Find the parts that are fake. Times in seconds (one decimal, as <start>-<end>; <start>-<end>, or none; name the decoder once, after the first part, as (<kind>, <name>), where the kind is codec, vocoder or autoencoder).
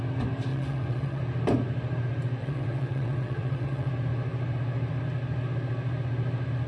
0.5-1.2 (vocoder, WaveNeXt); 2.4-3.9